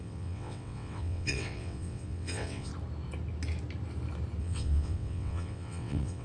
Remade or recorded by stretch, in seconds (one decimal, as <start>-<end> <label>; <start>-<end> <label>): 0.0-2.7 remade; 2.7-4.4 recorded; 4.4-6.2 remade